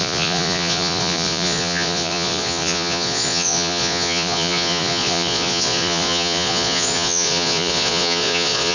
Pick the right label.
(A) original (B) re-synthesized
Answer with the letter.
B